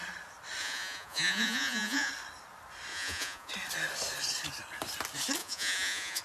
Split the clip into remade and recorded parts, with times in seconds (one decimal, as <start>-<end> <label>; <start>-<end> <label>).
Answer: 0.0-0.6 recorded; 0.6-2.1 remade; 2.1-2.9 recorded; 2.9-3.5 remade; 3.5-5.4 recorded; 5.4-6.2 remade